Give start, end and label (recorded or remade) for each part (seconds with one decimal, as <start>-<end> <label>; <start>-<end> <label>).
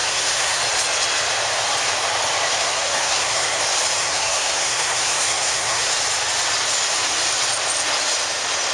0.0-0.6 remade; 0.6-2.6 recorded; 2.6-3.6 remade; 3.6-4.0 recorded; 4.0-5.9 remade; 5.9-8.7 recorded